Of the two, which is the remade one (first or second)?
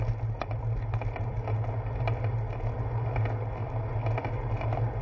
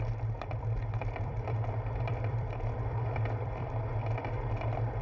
second